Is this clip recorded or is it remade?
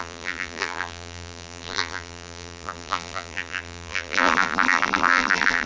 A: remade